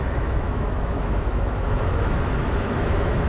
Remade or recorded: remade